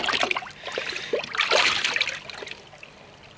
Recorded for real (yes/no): yes